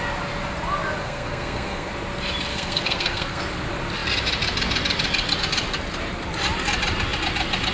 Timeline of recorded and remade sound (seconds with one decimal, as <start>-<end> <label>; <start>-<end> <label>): 0.0-1.0 recorded; 1.0-1.9 remade; 1.9-2.5 recorded; 2.5-3.4 remade; 3.4-7.7 recorded